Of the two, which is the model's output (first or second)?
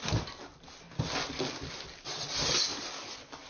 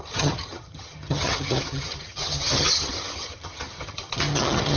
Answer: second